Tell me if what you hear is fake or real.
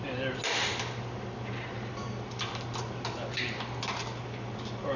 real